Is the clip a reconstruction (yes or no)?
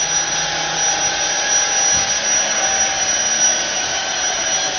no